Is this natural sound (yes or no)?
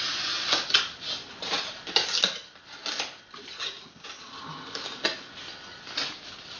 yes